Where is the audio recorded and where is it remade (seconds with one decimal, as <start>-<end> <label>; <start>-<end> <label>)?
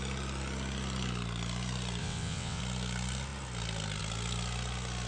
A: 0.0-2.0 recorded; 2.0-2.6 remade; 2.6-5.1 recorded